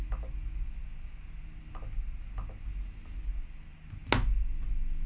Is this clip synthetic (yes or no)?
no